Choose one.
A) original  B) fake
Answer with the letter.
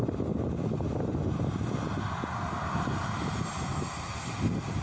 A